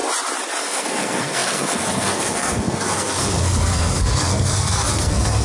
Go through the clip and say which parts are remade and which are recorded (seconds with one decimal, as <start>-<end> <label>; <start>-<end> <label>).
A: 0.0-0.6 recorded; 0.6-5.4 remade